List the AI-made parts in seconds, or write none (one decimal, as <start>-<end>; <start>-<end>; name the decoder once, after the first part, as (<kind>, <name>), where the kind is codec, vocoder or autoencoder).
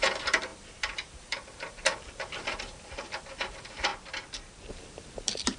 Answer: 0.0-3.9 (vocoder, BigVGAN v2); 4.7-5.6